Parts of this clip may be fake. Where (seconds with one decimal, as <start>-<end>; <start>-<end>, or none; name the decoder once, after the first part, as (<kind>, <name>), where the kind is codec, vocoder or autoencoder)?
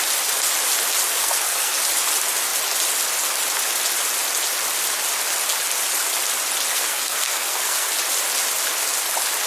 1.2-1.8 (codec, SNAC); 6.7-7.9